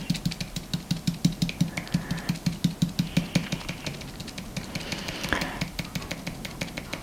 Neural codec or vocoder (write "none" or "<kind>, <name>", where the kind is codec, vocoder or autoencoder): none